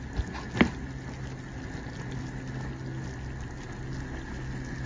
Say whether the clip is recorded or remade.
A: recorded